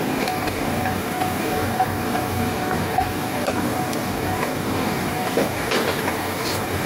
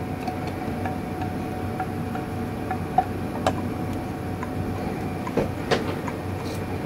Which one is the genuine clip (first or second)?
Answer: second